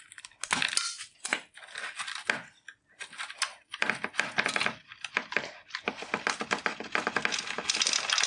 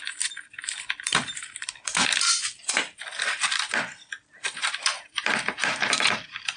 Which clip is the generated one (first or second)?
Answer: second